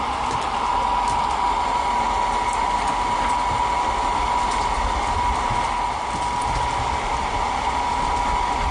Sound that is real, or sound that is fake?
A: real